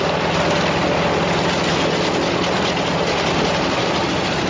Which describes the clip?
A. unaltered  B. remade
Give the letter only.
A